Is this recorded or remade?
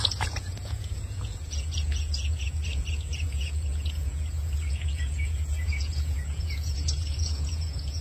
remade